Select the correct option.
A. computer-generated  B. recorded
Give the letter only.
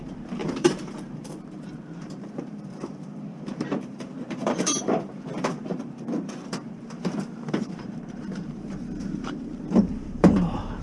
A